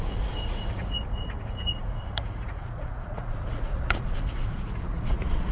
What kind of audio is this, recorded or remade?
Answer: remade